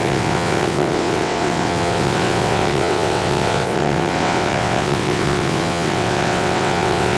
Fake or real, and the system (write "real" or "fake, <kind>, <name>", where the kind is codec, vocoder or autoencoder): fake, vocoder, WaveNeXt